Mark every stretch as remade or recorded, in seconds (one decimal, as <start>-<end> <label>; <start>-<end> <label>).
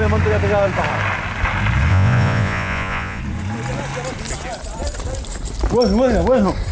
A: 0.0-1.9 recorded; 1.9-3.2 remade; 3.2-6.7 recorded